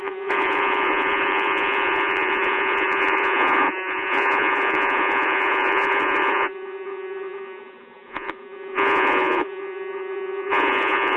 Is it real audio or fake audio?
fake